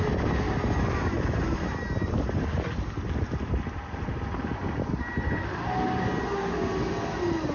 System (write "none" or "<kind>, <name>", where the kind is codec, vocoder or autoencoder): none